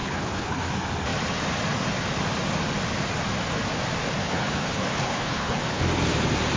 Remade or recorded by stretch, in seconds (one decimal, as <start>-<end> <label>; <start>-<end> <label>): 0.0-0.7 remade; 0.7-4.2 recorded; 4.2-5.8 remade; 5.8-6.6 recorded